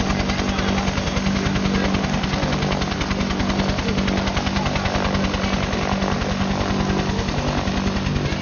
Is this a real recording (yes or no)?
yes